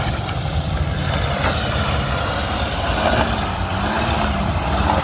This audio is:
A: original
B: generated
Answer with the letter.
A